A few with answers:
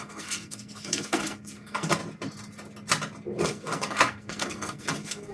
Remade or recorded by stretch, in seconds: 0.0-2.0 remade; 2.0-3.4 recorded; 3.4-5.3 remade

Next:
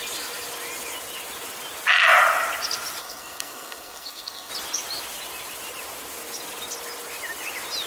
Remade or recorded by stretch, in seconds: 0.0-3.0 recorded; 3.0-4.5 remade; 4.5-7.9 recorded

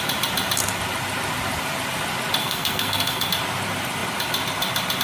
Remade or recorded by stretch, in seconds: 0.0-2.4 recorded; 2.4-3.3 remade; 3.3-5.0 recorded